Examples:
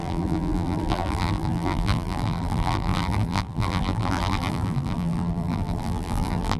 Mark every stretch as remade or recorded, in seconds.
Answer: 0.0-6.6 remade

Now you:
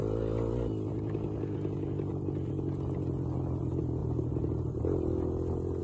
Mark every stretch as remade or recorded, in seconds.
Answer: 0.0-5.8 recorded

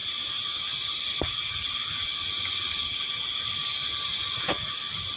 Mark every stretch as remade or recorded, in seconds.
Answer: 0.0-3.1 remade; 3.1-4.1 recorded; 4.1-4.8 remade; 4.8-5.2 recorded